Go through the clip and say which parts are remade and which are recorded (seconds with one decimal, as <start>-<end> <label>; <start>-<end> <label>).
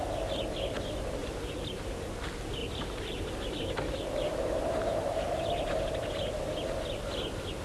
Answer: 0.0-1.2 recorded; 1.2-1.8 remade; 1.8-2.6 recorded; 2.6-6.3 remade; 6.3-7.6 recorded